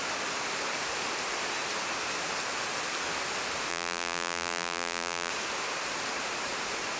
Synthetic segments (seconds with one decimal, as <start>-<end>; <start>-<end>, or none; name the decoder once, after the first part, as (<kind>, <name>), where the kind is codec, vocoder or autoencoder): 3.7-5.3 (vocoder, BigVGAN v2)